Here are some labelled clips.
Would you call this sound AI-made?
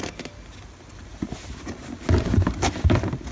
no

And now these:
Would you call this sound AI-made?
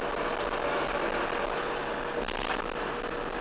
no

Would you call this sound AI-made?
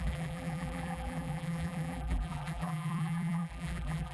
yes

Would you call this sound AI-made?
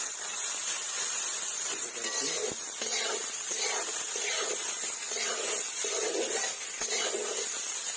no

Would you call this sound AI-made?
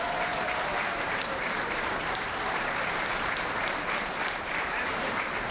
yes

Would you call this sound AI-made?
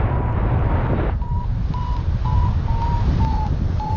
yes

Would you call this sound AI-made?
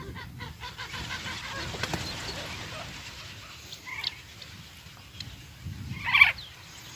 no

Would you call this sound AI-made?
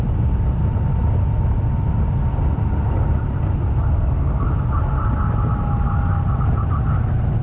no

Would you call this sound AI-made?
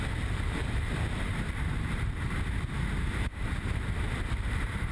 yes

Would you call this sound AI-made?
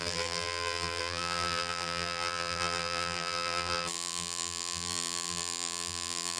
yes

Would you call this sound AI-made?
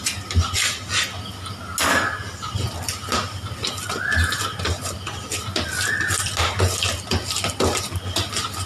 no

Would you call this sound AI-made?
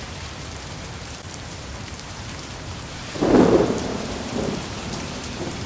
yes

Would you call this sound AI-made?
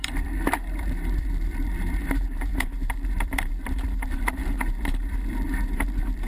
yes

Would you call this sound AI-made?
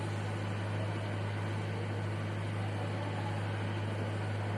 no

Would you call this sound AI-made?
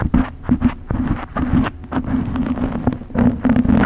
no